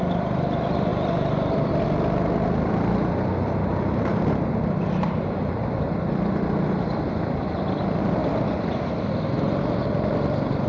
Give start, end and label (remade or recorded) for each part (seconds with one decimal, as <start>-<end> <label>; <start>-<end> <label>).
0.0-8.2 remade; 8.2-9.8 recorded; 9.8-10.7 remade